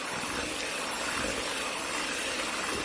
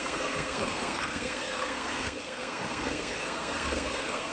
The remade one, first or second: second